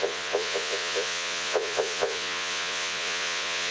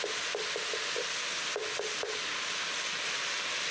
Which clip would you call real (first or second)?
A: second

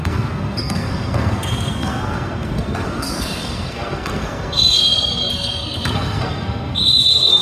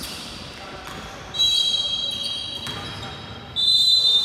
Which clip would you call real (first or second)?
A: second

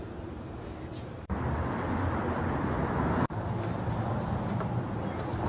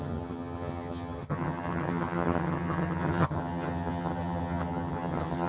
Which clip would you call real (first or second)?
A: first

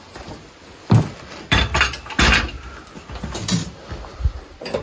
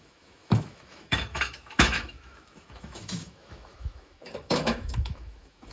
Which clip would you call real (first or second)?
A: first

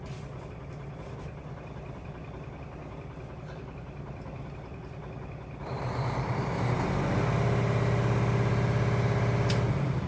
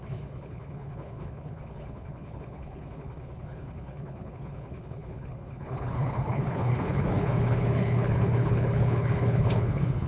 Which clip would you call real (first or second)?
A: first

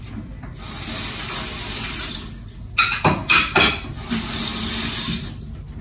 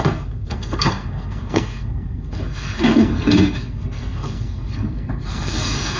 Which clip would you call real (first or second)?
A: first